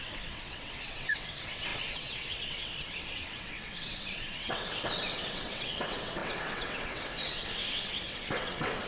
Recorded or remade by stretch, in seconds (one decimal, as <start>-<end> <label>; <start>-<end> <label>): 0.0-8.9 remade